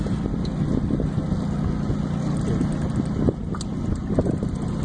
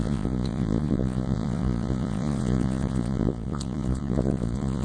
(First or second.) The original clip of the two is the first